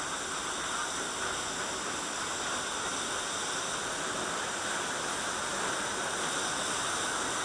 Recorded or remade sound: recorded